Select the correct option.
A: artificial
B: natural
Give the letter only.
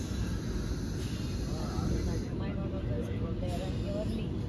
B